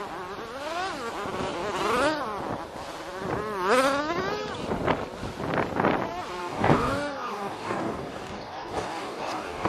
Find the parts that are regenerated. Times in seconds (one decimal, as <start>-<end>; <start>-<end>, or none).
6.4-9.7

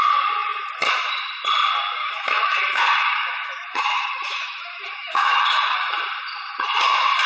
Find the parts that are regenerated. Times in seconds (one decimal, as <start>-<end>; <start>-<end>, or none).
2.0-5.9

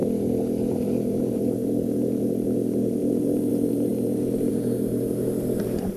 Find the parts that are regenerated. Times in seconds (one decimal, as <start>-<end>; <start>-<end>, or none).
0.7-6.0

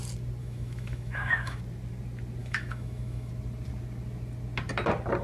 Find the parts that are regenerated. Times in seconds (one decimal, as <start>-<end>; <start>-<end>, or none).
0.4-1.6; 2.4-3.3

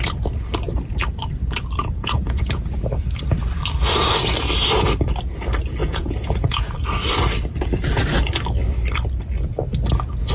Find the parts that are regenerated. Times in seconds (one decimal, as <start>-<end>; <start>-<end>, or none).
1.8-2.8; 5.8-6.7